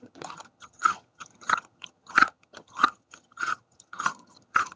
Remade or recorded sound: remade